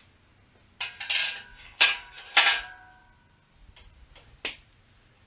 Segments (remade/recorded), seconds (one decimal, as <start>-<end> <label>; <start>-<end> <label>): 0.0-1.5 recorded; 1.5-2.2 remade; 2.2-5.3 recorded